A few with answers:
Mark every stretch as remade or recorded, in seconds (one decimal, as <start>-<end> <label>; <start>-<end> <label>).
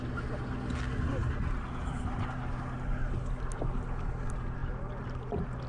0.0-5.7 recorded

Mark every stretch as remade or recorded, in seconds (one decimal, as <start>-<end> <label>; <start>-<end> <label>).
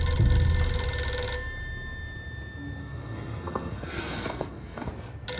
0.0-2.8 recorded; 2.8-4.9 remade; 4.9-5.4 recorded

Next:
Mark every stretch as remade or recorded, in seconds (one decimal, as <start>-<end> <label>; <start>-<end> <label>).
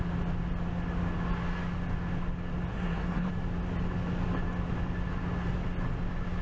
0.0-2.7 recorded; 2.7-3.3 remade; 3.3-6.4 recorded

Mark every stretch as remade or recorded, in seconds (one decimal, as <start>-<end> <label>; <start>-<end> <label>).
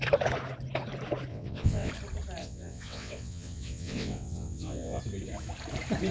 0.0-1.3 recorded; 1.3-1.9 remade; 1.9-2.4 recorded; 2.4-5.0 remade; 5.0-6.1 recorded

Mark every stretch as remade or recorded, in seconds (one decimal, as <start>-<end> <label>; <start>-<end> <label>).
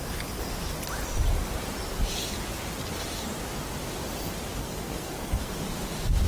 0.0-4.6 recorded; 4.6-5.5 remade; 5.5-6.3 recorded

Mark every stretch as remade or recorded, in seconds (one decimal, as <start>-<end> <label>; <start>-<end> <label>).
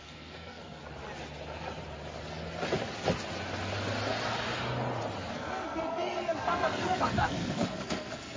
0.0-0.8 remade; 0.8-5.3 recorded; 5.3-8.4 remade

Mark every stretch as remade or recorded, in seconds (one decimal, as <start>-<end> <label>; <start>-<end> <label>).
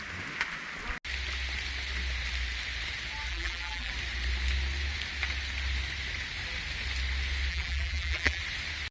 0.0-3.3 recorded; 3.3-3.9 remade; 3.9-7.5 recorded; 7.5-8.4 remade; 8.4-8.9 recorded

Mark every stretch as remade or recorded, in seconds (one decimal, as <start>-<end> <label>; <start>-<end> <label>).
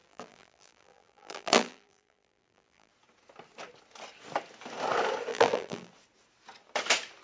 0.0-2.9 remade; 2.9-5.3 recorded; 5.3-5.9 remade; 5.9-7.2 recorded